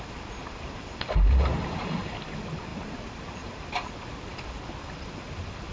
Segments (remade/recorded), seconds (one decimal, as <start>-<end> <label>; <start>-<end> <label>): 0.0-0.4 recorded; 0.4-2.0 remade; 2.0-2.7 recorded; 2.7-3.9 remade; 3.9-5.7 recorded